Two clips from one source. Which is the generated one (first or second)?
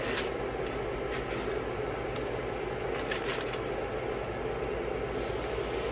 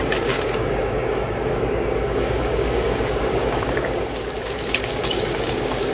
second